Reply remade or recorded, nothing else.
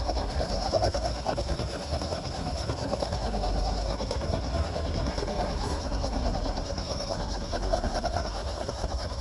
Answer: remade